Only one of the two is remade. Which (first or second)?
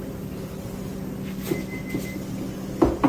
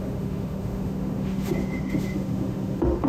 second